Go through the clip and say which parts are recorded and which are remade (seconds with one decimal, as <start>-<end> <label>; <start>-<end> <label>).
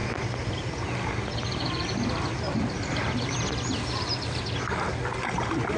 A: 0.0-5.8 recorded